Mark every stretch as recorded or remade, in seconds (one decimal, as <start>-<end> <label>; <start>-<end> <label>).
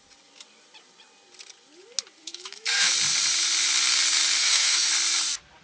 0.0-2.3 recorded; 2.3-2.9 remade; 2.9-4.4 recorded; 4.4-4.9 remade; 4.9-5.6 recorded